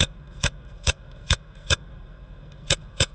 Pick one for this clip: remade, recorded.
remade